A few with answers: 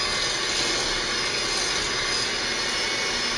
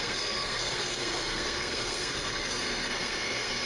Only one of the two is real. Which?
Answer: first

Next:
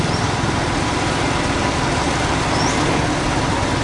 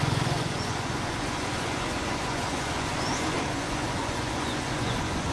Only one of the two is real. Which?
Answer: first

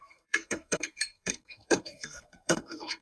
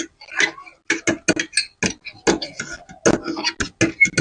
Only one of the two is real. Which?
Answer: second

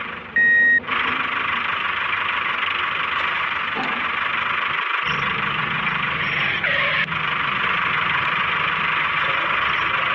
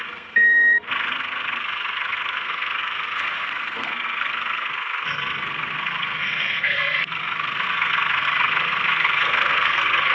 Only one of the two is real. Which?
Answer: first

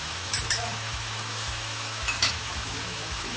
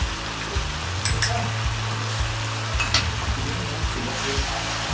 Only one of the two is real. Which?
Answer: second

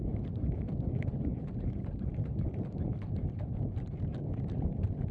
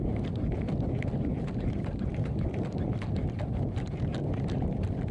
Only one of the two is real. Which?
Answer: second